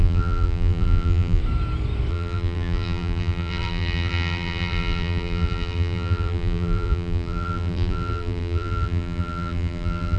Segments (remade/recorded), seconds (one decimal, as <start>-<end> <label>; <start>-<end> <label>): 0.0-1.4 remade; 1.4-2.1 recorded; 2.1-10.2 remade